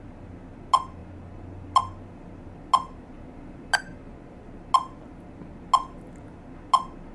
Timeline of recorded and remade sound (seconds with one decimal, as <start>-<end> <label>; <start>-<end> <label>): 0.0-7.1 recorded